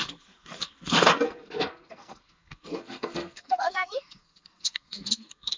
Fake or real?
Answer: fake